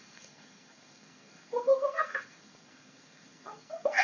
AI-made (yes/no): yes